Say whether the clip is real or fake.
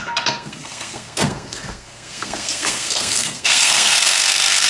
fake